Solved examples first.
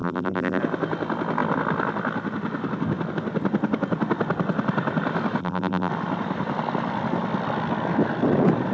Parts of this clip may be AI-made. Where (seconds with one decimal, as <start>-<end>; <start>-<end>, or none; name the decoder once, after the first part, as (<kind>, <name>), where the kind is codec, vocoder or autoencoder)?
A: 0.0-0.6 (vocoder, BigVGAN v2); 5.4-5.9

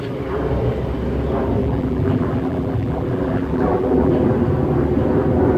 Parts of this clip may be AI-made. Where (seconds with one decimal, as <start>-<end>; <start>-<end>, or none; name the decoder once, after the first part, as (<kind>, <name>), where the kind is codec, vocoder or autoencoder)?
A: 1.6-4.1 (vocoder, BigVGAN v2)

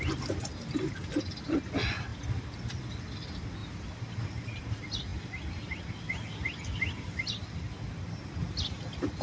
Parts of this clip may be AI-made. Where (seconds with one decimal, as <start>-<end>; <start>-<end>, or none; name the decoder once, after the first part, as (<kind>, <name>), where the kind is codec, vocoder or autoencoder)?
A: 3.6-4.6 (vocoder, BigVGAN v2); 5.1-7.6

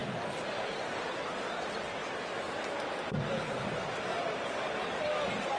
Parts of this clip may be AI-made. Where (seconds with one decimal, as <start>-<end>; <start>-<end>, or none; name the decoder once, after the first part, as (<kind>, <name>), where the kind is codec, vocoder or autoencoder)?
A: none

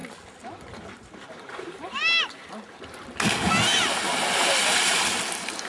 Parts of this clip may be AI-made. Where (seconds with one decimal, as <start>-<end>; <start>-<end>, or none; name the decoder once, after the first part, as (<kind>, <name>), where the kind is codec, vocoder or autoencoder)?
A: 4.6-5.2 (vocoder, BigVGAN v2)

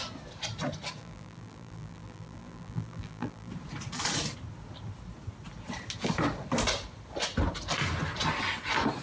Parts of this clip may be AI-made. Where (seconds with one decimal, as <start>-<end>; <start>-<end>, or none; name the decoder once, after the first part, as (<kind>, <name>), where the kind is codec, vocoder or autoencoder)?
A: 1.0-3.5 (vocoder, BigVGAN v2)